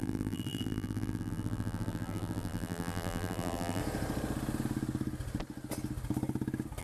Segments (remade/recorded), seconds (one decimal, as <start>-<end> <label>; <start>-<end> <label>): 0.0-3.8 remade; 3.8-6.8 recorded